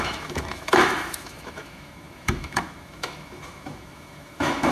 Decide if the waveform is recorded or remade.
remade